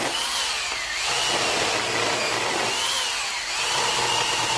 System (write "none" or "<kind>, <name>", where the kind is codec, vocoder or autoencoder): none